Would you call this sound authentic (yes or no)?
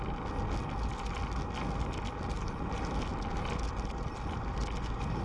yes